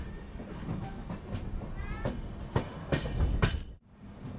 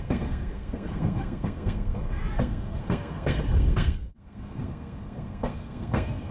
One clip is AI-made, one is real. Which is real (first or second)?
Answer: first